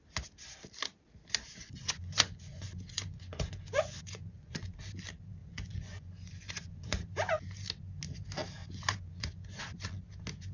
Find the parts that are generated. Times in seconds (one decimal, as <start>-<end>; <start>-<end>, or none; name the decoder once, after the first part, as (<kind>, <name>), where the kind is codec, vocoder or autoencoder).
1.5-4.7 (vocoder, Vocos); 5.4-7.0; 8.6-9.6